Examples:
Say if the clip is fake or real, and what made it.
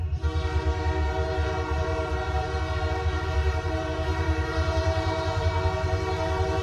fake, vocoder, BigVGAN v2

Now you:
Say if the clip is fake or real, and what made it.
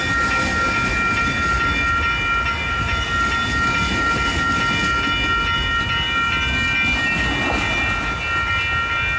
real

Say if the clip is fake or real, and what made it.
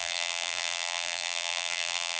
fake, vocoder, BigVGAN v2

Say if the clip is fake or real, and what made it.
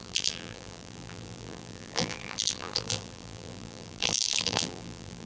fake, vocoder, BigVGAN v2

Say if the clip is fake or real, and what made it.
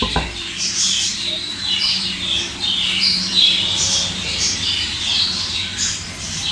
fake, vocoder, BigVGAN v2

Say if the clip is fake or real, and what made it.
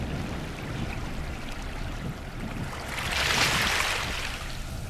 real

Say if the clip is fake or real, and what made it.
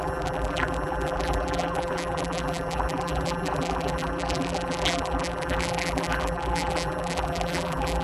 fake, vocoder, BigVGAN v2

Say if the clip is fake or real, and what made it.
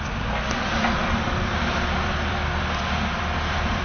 fake, vocoder, BigVGAN v2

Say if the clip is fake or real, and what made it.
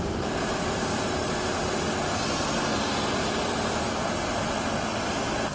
real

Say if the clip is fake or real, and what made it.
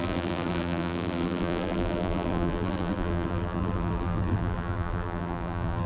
fake, vocoder, BigVGAN v2